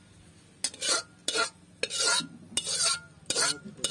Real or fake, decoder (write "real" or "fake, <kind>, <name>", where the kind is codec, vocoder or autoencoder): real